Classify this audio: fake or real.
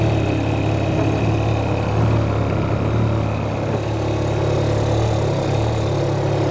real